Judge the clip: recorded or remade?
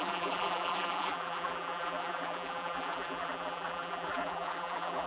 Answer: remade